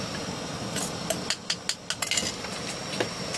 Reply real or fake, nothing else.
real